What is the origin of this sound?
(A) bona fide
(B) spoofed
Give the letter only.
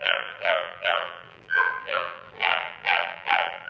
B